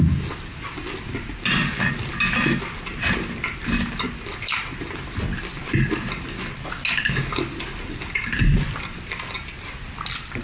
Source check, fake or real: real